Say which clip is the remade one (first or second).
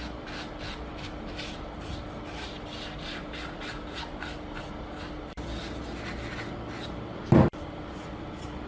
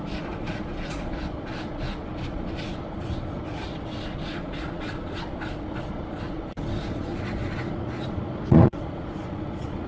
second